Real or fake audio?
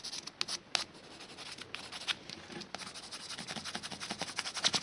real